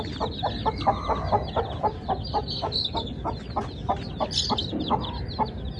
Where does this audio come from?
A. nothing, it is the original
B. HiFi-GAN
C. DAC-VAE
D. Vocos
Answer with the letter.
A